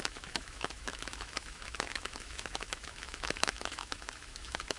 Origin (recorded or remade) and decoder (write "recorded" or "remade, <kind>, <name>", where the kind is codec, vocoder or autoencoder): remade, autoencoder, DAC-VAE